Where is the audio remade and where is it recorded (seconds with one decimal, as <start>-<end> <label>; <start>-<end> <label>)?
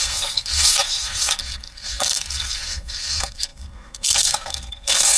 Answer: 0.0-5.2 remade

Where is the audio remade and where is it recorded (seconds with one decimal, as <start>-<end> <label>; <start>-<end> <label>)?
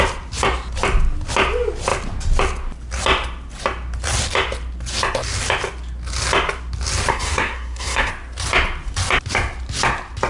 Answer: 0.0-7.1 recorded; 7.1-8.1 remade; 8.1-10.3 recorded